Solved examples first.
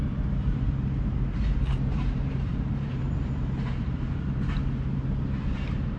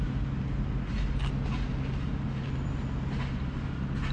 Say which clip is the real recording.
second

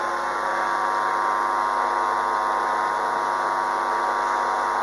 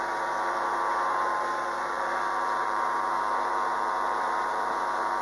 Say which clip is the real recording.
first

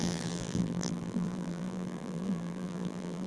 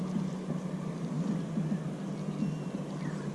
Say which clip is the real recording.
second